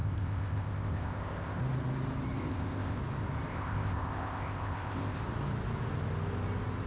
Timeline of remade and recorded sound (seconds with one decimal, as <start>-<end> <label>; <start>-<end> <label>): 0.0-1.6 remade; 1.6-2.4 recorded; 2.4-3.0 remade; 3.0-3.5 recorded; 3.5-5.2 remade; 5.2-6.9 recorded